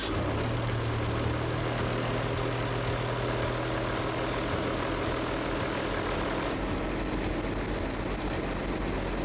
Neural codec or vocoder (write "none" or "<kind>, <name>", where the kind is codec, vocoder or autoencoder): none